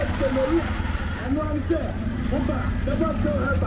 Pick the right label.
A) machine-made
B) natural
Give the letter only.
B